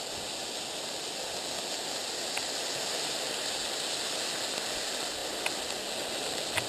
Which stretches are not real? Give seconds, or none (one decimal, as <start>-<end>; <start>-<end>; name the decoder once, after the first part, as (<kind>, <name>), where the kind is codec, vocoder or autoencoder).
none